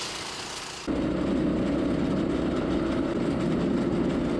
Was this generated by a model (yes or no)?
no